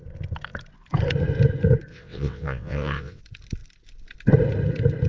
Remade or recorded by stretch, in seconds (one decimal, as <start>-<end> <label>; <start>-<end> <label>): 0.0-1.9 recorded; 1.9-3.2 remade; 3.2-5.1 recorded